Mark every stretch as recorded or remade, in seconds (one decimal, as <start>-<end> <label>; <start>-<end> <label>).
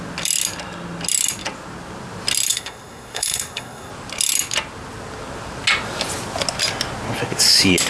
0.0-2.5 recorded; 2.5-3.9 remade; 3.9-7.9 recorded